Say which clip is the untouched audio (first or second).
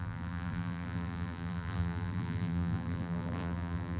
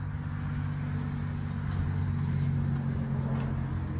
second